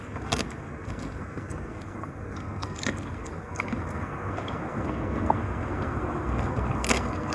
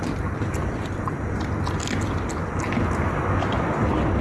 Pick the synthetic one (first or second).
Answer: first